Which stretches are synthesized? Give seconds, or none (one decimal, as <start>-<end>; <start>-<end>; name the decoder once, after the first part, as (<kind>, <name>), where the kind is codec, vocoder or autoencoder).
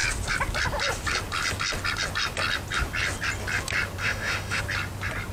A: 4.0-4.6 (autoencoder, DAC-VAE)